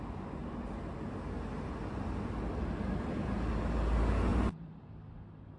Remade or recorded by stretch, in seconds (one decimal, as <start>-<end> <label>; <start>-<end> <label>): 0.0-4.3 recorded; 4.3-4.9 remade; 4.9-5.6 recorded